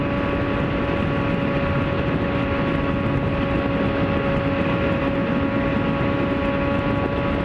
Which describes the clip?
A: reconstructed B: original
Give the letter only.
B